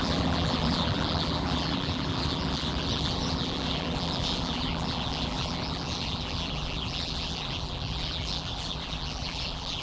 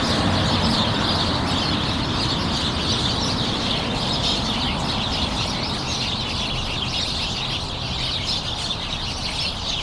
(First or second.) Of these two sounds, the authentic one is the second